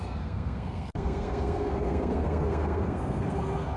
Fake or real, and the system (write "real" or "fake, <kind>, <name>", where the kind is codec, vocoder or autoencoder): fake, codec, SNAC